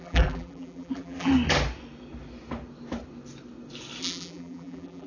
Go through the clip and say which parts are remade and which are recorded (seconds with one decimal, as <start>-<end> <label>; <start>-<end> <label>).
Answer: 0.0-1.3 remade; 1.3-4.0 recorded; 4.0-5.1 remade